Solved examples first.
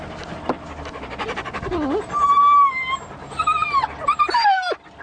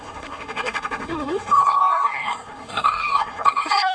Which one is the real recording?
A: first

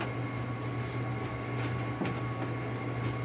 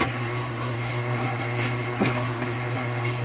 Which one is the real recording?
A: first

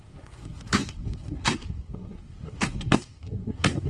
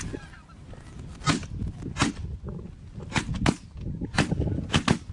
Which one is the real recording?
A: second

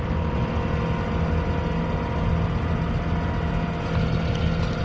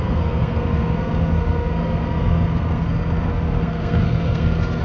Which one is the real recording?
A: first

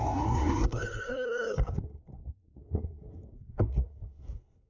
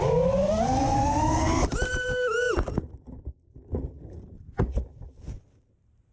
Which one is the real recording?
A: second